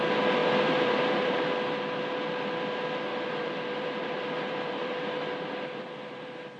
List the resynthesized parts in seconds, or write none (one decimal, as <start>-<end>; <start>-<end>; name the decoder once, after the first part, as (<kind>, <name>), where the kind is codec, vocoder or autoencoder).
0.4-1.4 (vocoder, BigVGAN v2); 3.1-6.6